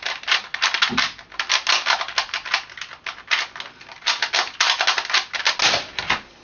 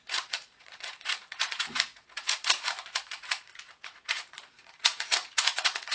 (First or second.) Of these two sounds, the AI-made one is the second